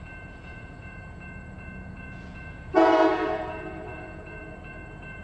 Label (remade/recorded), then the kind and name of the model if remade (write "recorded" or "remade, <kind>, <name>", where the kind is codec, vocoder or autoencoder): remade, vocoder, Vocos